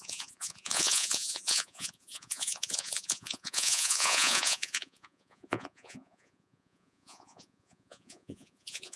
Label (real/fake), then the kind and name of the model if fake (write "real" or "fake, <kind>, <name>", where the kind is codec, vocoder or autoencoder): fake, vocoder, Vocos